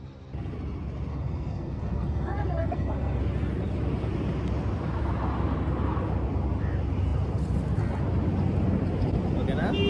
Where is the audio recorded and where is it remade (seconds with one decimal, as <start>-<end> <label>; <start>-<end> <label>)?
0.0-1.1 recorded; 1.1-3.2 remade; 3.2-9.9 recorded